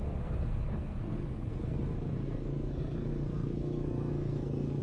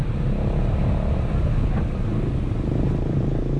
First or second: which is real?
second